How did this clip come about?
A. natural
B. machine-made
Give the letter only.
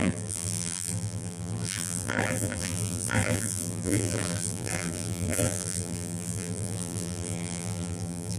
B